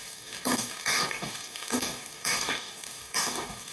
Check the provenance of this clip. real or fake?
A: fake